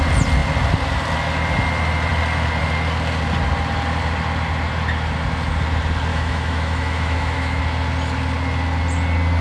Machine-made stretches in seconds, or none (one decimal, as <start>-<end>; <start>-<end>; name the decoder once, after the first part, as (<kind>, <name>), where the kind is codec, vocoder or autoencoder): 6.1-7.6 (autoencoder, DAC-VAE)